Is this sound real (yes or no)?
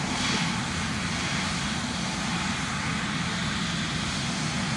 yes